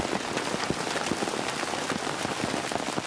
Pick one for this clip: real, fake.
real